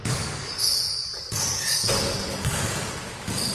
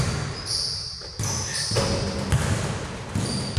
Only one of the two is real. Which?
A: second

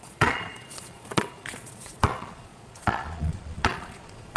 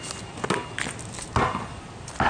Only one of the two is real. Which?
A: second